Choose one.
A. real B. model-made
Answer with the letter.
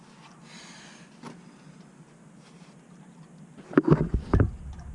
A